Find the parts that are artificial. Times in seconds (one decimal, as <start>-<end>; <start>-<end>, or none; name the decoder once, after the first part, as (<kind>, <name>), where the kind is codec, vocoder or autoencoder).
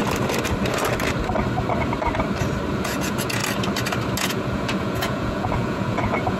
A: 2.7-3.4 (vocoder, Vocos); 4.2-6.4